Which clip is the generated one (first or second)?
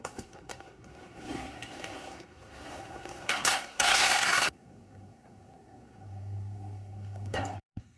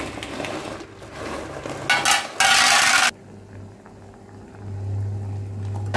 first